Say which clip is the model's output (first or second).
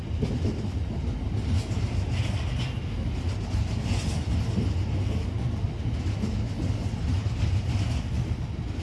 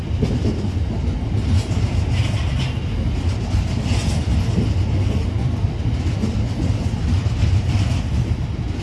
second